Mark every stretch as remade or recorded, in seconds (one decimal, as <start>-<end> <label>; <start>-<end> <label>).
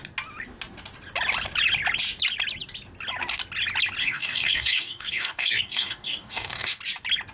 0.0-4.0 recorded; 4.0-6.8 remade; 6.8-7.3 recorded